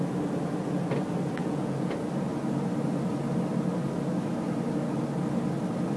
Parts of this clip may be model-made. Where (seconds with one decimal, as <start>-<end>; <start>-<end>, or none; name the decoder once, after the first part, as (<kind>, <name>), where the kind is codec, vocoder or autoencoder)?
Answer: 1.4-1.9 (vocoder, Vocos)